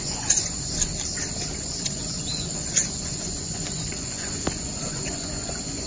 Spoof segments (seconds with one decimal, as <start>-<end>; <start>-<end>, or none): 0.0-0.9; 1.4-5.9